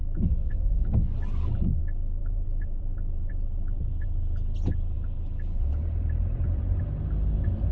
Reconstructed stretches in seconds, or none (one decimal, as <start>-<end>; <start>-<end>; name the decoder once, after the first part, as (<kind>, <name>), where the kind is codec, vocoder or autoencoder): 2.2-6.8 (vocoder, BigVGAN v2)